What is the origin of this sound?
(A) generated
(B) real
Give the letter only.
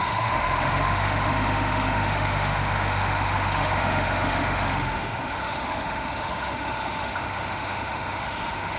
A